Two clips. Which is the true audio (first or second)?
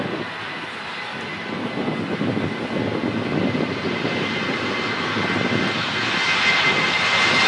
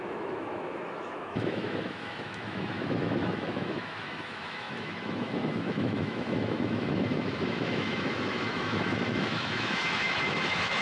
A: first